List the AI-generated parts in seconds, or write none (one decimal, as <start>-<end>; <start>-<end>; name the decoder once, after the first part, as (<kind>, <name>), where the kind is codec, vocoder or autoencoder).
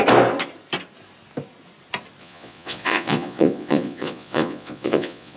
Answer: 2.2-5.4 (vocoder, Vocos)